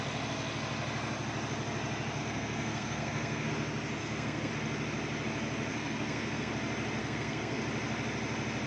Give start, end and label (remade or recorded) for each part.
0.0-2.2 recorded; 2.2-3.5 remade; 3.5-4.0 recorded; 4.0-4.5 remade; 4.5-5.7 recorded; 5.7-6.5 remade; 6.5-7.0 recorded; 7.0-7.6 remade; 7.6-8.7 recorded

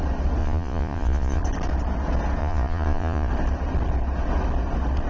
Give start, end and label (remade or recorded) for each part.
0.0-0.4 recorded; 0.4-1.4 remade; 1.4-2.4 recorded; 2.4-3.3 remade; 3.3-5.1 recorded

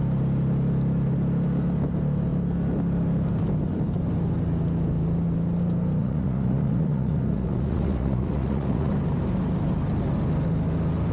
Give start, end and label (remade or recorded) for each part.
0.0-6.0 recorded; 6.0-8.9 remade; 8.9-11.1 recorded

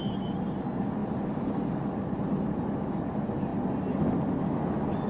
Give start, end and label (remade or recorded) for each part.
0.0-5.1 recorded

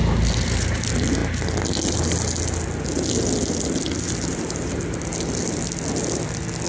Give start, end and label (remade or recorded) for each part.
0.0-6.7 recorded